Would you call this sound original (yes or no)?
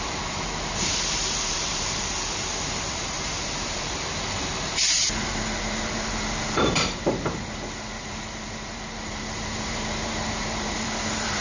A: no